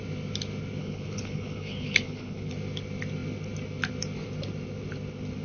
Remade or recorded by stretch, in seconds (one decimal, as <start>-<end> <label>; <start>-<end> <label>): 0.0-0.8 recorded; 0.8-2.5 remade; 2.5-5.4 recorded